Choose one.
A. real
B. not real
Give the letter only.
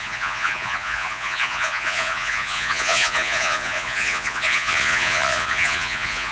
B